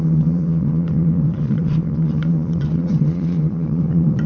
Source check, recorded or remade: remade